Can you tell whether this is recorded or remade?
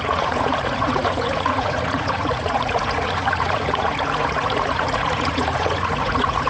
remade